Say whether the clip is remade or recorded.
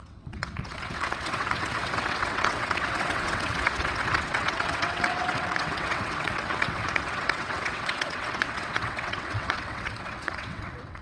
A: remade